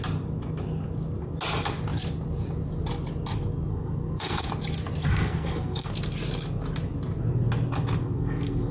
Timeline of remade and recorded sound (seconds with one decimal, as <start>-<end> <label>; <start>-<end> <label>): 0.0-3.7 recorded; 3.7-4.5 remade; 4.5-5.0 recorded; 5.0-5.9 remade; 5.9-8.0 recorded; 8.0-8.7 remade